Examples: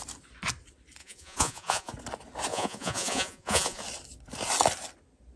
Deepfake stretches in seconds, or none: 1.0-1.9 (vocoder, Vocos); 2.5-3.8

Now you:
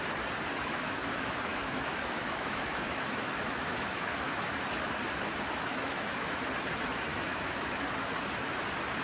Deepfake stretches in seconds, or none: 0.5-4.8 (autoencoder, DAC-VAE); 5.7-6.5; 7.1-7.7

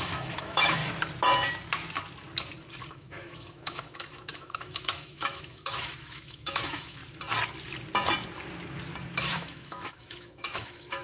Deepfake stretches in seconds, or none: 0.0-0.8 (autoencoder, DAC-VAE); 2.9-7.0; 9.2-11.0